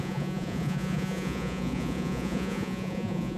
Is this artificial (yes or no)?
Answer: yes